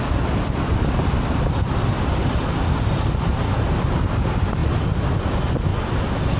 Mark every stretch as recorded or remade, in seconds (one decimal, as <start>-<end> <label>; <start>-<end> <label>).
0.0-6.4 recorded